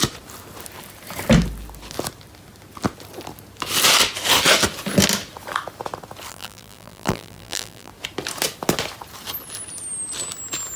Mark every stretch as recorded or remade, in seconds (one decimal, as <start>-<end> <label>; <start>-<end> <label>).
0.0-6.3 recorded; 6.3-7.9 remade; 7.9-10.8 recorded